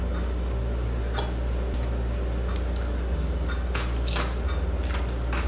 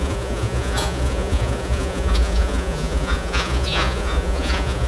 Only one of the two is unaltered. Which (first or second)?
first